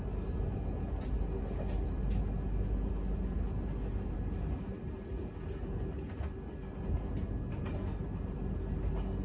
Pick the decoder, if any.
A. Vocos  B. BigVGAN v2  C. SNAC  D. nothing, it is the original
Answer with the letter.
D